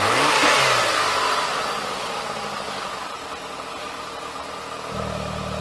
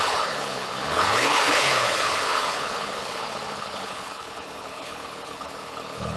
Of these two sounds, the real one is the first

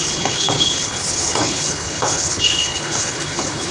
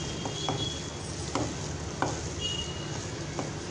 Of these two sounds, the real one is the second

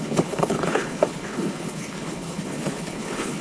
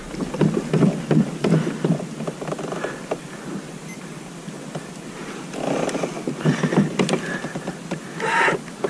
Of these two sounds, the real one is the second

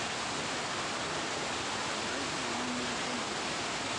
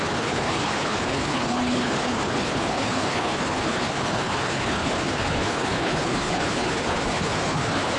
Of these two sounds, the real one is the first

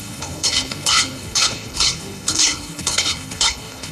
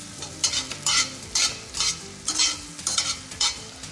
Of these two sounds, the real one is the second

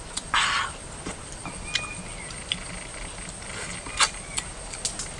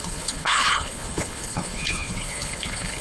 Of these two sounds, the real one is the first